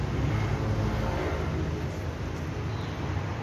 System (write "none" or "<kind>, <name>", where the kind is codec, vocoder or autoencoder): none